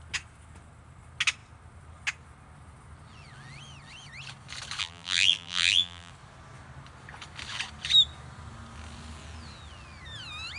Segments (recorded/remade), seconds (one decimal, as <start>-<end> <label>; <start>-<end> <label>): 0.0-4.8 recorded; 4.8-6.1 remade; 6.1-10.6 recorded

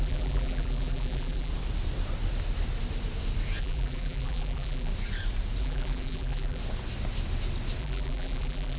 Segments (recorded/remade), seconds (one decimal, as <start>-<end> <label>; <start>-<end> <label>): 0.0-1.5 remade; 1.5-3.6 recorded; 3.6-4.9 remade; 4.9-5.6 recorded; 5.6-6.6 remade; 6.6-7.8 recorded; 7.8-8.8 remade